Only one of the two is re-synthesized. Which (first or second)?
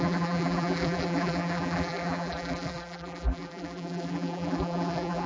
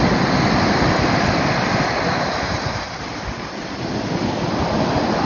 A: first